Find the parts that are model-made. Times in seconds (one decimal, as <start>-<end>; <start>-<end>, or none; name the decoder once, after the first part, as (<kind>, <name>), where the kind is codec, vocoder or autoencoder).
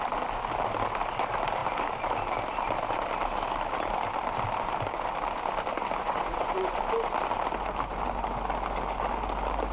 6.0-6.8 (vocoder, Vocos)